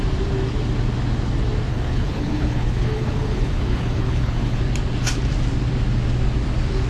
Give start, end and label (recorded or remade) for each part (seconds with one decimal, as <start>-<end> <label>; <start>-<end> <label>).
0.0-1.7 recorded; 1.7-4.6 remade; 4.6-6.9 recorded